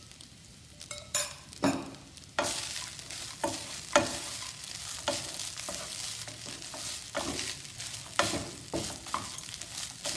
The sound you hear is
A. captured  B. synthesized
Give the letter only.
A